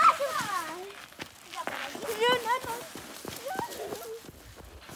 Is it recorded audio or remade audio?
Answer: recorded